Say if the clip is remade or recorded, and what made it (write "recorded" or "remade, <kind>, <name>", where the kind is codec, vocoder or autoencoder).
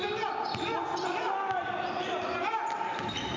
recorded